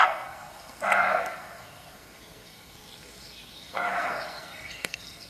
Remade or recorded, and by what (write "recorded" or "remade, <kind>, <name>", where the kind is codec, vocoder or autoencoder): remade, codec, SNAC